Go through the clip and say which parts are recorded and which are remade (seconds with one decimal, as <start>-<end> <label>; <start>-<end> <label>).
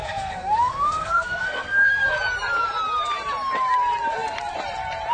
0.0-2.1 remade; 2.1-5.1 recorded